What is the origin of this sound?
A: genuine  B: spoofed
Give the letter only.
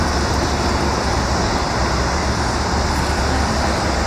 A